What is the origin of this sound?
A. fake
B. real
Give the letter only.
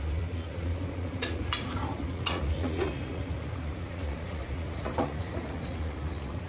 A